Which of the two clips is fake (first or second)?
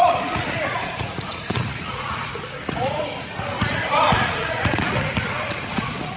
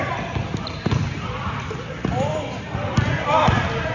first